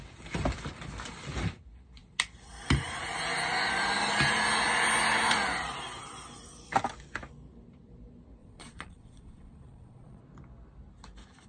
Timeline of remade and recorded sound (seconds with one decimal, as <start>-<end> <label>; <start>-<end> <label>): 0.0-8.4 recorded; 8.4-10.2 remade; 10.2-11.5 recorded